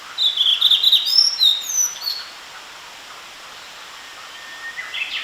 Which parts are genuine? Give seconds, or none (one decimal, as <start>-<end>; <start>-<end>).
0.0-5.2